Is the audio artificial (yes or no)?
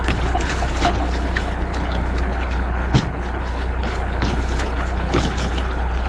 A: yes